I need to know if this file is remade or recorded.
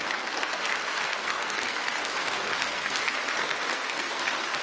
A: remade